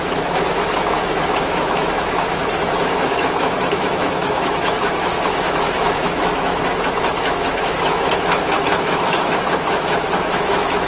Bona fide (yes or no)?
no